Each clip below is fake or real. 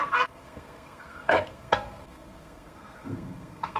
fake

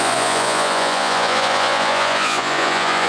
fake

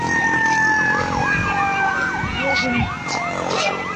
real